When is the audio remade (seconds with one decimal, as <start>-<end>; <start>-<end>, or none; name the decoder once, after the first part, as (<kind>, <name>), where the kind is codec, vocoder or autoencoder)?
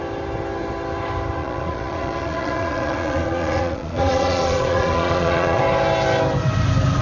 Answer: 1.4-5.6 (vocoder, Vocos)